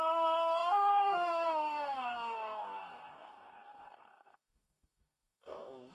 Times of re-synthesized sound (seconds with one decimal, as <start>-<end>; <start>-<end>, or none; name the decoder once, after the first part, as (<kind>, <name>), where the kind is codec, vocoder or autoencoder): 0.0-5.9 (codec, DAC)